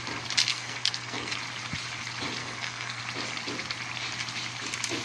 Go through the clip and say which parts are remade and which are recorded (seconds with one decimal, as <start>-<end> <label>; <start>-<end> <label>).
0.0-0.5 recorded; 0.5-1.3 remade; 1.3-2.4 recorded; 2.4-3.0 remade; 3.0-5.0 recorded